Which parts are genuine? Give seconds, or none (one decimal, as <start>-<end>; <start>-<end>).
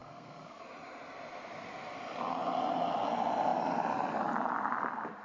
0.6-5.2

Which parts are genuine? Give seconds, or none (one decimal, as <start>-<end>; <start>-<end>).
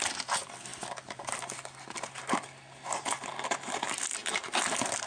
0.0-5.1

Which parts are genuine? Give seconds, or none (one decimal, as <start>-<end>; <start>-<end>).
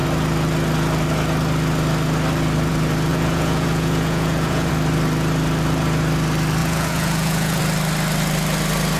0.0-3.1; 4.7-6.6; 7.6-9.0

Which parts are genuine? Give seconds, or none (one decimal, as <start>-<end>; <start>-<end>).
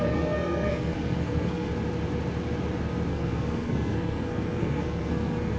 1.7-3.1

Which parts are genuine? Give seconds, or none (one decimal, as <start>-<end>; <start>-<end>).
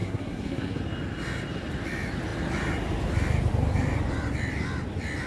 0.8-5.3